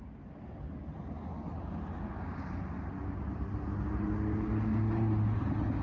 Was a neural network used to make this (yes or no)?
no